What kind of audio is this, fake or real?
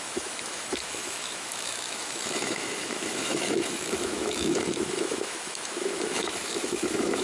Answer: fake